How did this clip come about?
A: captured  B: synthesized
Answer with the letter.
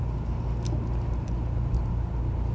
A